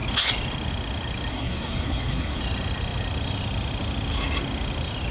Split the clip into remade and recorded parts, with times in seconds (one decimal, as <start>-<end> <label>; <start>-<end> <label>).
0.0-1.3 recorded; 1.3-2.4 remade; 2.4-5.1 recorded